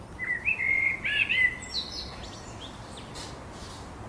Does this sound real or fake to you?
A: real